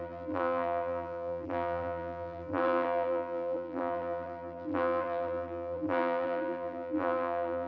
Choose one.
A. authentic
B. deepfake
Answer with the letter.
B